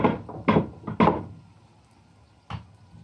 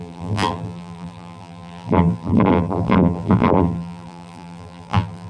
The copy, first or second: second